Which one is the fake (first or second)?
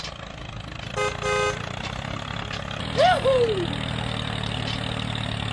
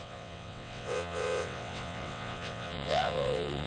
second